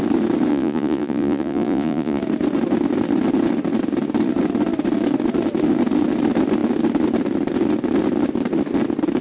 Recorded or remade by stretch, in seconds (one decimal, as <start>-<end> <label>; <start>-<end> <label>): 0.0-0.5 recorded; 0.5-2.2 remade; 2.2-9.2 recorded